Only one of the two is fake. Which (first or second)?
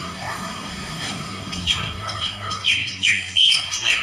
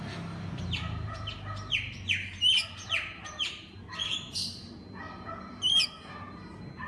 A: first